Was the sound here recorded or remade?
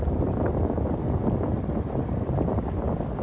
recorded